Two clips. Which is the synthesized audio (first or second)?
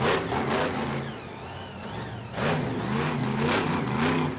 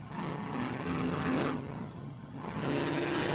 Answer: second